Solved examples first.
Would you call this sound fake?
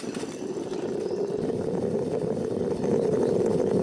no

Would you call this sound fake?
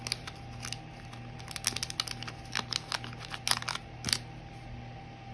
no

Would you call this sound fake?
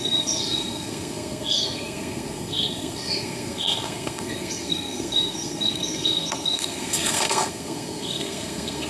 yes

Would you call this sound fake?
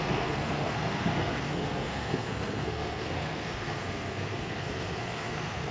yes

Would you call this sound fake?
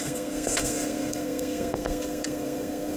yes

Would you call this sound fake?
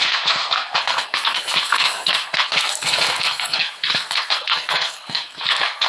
yes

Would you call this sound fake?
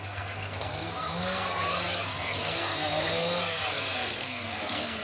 yes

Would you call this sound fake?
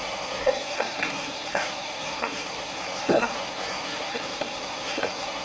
yes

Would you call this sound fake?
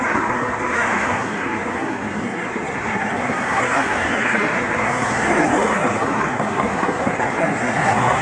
yes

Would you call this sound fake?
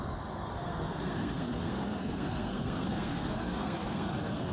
yes